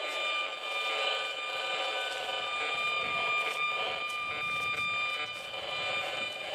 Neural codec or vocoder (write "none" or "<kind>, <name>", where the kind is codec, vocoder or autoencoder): none